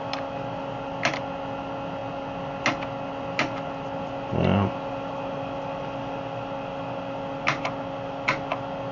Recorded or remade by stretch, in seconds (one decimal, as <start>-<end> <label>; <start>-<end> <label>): 0.0-8.9 recorded